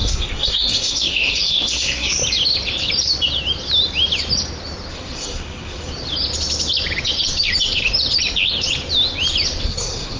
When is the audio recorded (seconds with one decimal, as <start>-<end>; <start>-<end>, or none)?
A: 2.2-4.9; 5.9-9.6